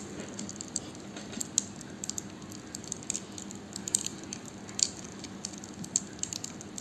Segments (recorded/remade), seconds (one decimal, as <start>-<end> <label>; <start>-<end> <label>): 0.0-4.1 recorded; 4.1-5.0 remade; 5.0-6.8 recorded